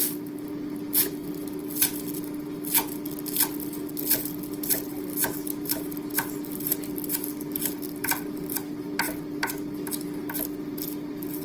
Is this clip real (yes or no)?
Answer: yes